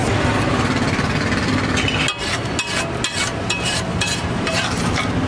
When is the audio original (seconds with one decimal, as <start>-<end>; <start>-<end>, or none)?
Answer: 0.0-3.2; 4.6-5.3